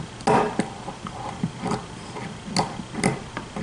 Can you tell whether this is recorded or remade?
recorded